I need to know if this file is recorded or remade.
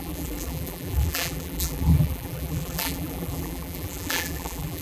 remade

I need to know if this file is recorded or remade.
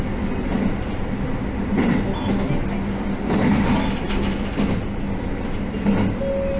recorded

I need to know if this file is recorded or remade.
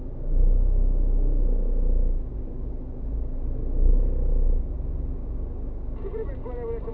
recorded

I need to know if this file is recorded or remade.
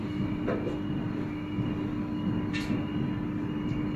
recorded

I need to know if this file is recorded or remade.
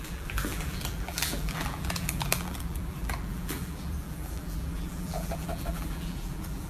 remade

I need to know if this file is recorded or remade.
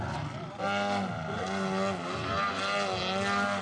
recorded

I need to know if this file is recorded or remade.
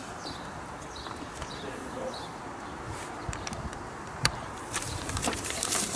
remade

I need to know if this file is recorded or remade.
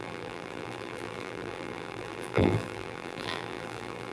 remade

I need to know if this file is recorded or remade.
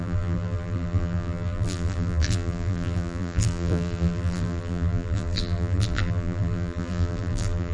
remade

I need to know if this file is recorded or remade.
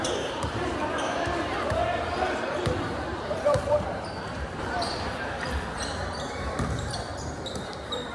remade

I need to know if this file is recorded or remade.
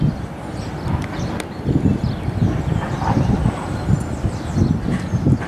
recorded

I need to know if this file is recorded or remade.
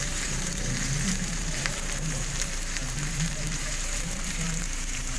remade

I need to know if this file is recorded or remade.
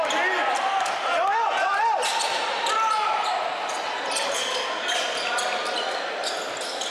recorded